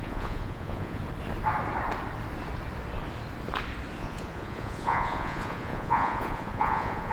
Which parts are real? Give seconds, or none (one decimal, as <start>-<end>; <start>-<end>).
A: 1.0-4.0